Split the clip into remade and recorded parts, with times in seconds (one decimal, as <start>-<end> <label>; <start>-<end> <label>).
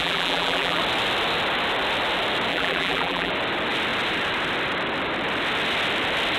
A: 0.0-0.8 remade; 0.8-2.5 recorded; 2.5-3.3 remade; 3.3-6.4 recorded